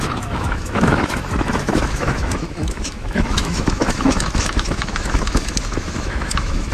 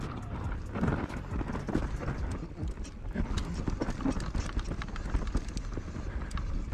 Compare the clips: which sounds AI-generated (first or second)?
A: first